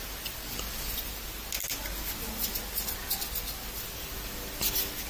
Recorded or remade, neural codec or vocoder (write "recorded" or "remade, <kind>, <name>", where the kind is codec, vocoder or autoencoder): recorded